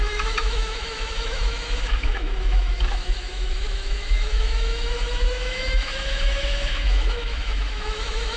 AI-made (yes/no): yes